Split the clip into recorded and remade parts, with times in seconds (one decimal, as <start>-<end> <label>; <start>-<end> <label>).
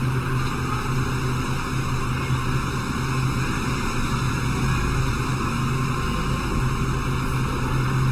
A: 0.0-8.1 recorded